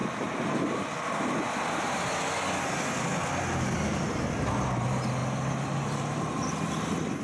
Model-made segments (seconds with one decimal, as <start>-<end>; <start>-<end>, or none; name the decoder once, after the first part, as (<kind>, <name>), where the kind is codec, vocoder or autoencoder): none